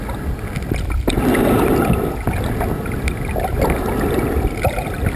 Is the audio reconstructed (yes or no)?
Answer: no